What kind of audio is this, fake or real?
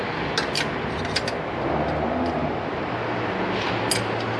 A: real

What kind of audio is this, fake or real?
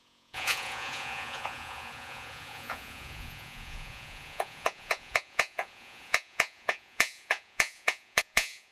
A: fake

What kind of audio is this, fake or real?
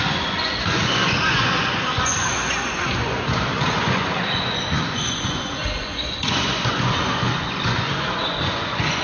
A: fake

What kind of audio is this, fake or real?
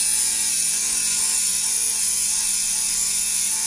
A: fake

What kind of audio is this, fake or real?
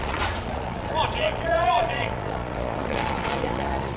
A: fake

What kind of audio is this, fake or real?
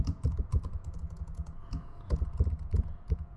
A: fake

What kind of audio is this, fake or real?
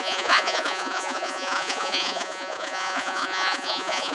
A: fake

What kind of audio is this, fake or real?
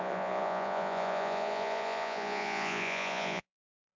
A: fake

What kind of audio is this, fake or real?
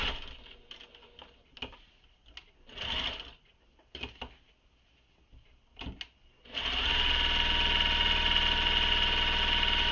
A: real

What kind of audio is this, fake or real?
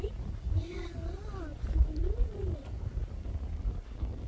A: real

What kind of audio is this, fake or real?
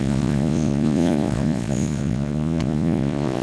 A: fake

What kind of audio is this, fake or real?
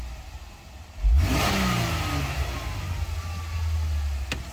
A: real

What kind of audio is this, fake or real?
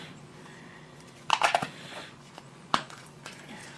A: fake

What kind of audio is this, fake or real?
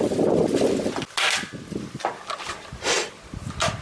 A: real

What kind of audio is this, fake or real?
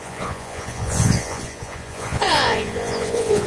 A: fake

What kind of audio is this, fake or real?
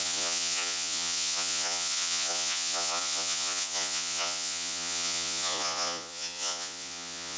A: fake